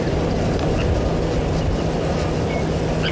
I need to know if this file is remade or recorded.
recorded